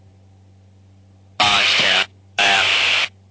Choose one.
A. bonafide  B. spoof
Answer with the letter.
B